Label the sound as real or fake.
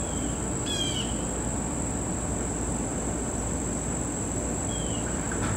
fake